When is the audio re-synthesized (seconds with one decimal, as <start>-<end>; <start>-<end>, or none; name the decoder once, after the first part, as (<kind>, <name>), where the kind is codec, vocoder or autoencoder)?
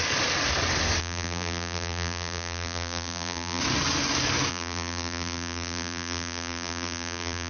1.0-3.6 (vocoder, BigVGAN v2); 4.5-7.5